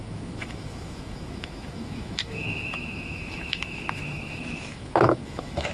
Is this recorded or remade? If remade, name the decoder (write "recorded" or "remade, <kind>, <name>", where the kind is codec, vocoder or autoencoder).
remade, autoencoder, DAC-VAE